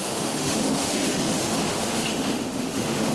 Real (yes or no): no